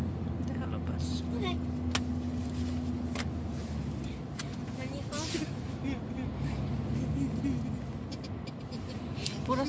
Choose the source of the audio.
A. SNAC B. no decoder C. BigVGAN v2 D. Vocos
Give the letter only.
B